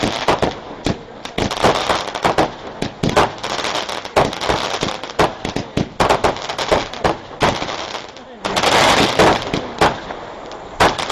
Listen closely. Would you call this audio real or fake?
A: real